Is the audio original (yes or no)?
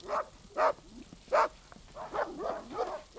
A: yes